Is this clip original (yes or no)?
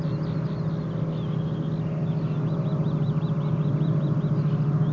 yes